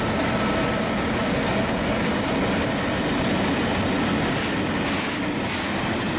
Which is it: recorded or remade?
recorded